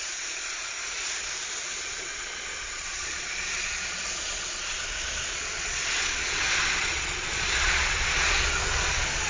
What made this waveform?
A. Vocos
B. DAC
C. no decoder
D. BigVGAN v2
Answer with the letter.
A